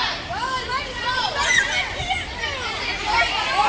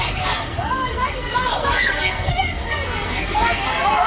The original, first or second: first